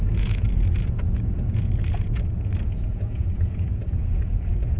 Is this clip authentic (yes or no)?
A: no